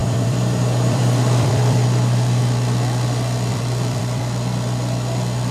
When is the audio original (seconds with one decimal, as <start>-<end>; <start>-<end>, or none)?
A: 2.4-3.5; 4.2-5.5